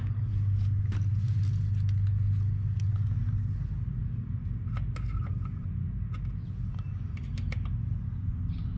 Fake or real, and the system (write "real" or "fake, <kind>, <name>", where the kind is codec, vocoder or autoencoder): real